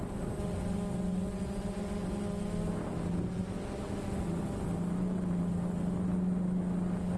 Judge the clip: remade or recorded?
recorded